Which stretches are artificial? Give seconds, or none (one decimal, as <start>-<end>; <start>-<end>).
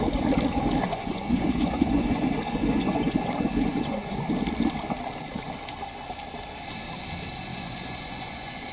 0.9-4.3; 7.5-8.7